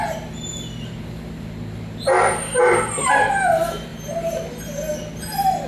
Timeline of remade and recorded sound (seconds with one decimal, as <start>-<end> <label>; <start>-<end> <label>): 0.0-3.9 recorded; 3.9-4.5 remade; 4.5-5.7 recorded